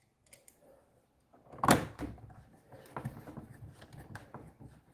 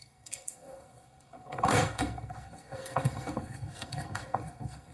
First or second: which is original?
first